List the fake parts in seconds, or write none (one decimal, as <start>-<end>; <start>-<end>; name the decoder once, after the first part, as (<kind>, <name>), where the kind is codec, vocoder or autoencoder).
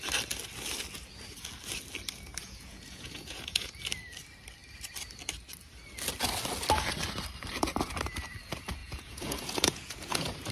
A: 2.4-3.7 (vocoder, Vocos); 8.8-10.5